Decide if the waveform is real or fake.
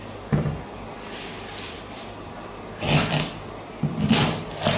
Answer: real